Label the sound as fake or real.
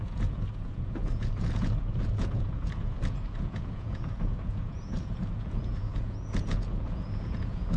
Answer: fake